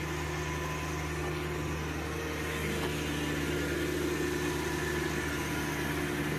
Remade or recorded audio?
recorded